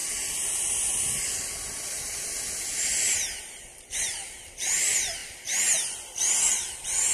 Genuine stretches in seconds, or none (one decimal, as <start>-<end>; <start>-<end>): 0.0-3.4; 5.2-6.3